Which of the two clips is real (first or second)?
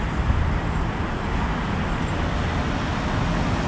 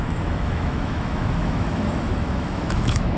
first